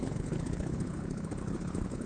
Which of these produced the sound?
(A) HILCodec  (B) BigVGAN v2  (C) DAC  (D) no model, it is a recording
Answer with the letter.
A